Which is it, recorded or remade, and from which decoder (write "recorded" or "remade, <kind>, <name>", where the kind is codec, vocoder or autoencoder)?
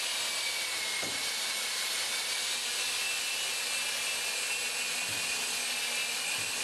recorded